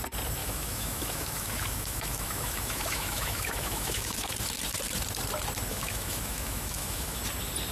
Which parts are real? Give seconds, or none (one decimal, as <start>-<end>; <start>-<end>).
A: 0.0-0.4; 4.3-5.7; 7.2-7.7